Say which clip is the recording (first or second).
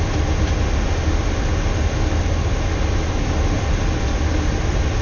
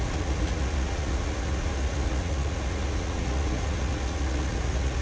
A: first